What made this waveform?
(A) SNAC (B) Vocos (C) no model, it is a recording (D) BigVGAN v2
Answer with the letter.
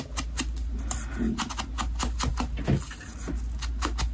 C